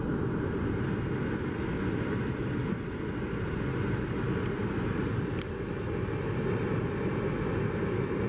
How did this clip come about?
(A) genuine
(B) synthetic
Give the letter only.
A